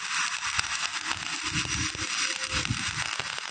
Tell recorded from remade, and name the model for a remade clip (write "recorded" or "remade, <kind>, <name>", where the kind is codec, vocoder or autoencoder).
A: recorded